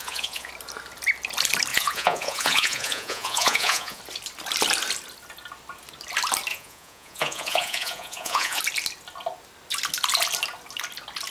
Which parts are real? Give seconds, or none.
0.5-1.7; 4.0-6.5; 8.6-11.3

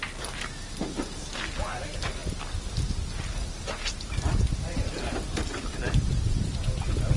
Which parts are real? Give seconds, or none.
0.0-7.2

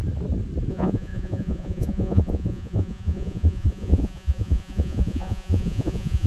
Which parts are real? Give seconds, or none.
0.0-0.7